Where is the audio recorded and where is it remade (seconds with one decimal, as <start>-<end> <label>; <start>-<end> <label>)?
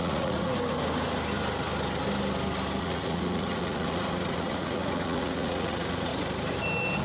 0.0-0.5 remade; 0.5-2.8 recorded; 2.8-6.1 remade; 6.1-7.0 recorded